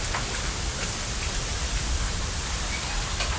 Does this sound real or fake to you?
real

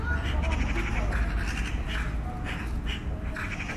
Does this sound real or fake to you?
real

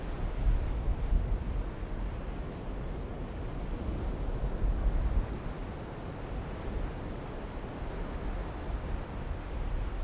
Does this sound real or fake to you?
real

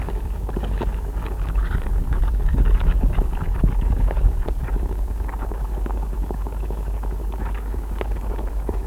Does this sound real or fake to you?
fake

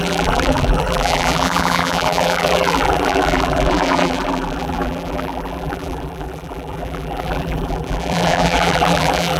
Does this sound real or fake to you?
fake